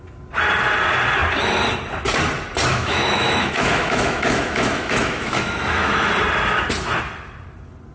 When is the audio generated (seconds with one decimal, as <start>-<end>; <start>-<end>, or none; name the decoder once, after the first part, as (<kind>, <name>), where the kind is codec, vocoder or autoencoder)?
2.7-6.1 (autoencoder, DAC-VAE)